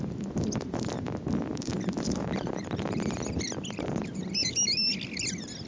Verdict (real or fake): real